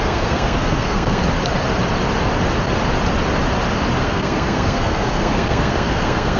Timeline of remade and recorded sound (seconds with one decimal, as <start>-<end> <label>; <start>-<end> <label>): 0.0-1.2 remade; 1.2-4.0 recorded; 4.0-6.4 remade